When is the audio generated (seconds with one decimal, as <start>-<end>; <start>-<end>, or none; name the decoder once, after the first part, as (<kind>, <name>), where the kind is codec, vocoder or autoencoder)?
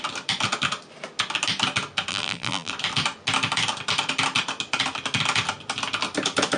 2.1-2.7 (vocoder, BigVGAN v2)